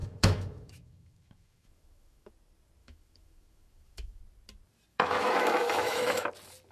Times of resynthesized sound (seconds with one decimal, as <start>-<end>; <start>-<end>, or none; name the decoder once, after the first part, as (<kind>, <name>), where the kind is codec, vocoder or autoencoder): 0.0-2.3 (autoencoder, DAC-VAE); 2.8-4.2; 4.9-6.3